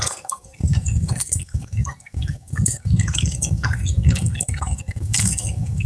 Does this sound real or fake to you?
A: fake